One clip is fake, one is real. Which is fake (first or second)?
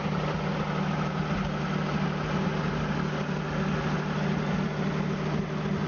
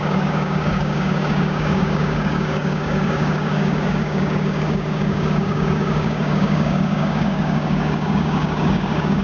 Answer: second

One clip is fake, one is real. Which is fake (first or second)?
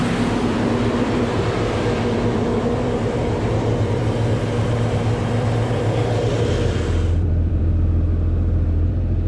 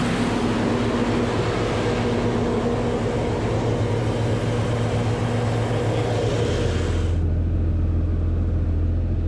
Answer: first